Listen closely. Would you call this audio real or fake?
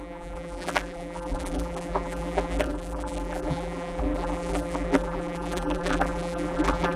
fake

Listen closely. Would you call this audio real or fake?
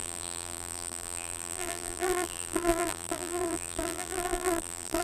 fake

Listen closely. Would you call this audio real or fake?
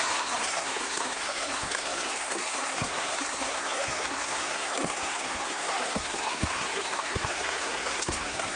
fake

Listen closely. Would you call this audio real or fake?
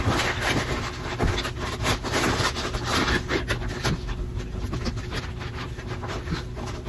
real